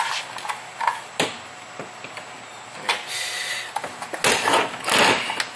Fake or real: real